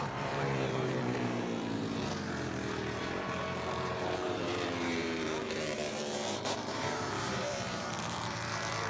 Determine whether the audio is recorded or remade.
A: remade